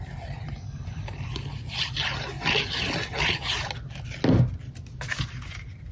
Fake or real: real